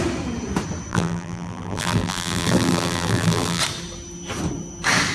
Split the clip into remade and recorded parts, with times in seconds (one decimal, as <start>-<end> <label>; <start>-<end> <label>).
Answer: 0.0-0.9 recorded; 0.9-3.6 remade; 3.6-5.1 recorded